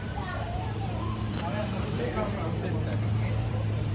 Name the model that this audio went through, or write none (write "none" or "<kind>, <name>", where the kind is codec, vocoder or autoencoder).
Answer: vocoder, BigVGAN v2